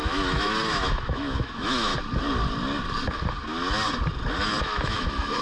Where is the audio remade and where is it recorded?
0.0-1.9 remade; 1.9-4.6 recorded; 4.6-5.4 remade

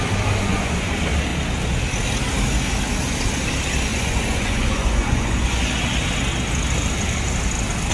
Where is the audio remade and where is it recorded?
0.0-0.4 recorded; 0.4-0.9 remade; 0.9-3.9 recorded; 3.9-5.7 remade; 5.7-7.9 recorded

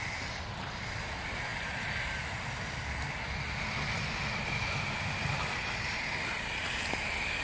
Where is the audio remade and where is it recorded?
0.0-7.4 recorded

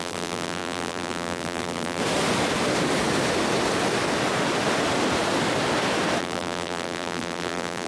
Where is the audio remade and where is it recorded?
0.0-2.0 remade; 2.0-6.2 recorded; 6.2-7.9 remade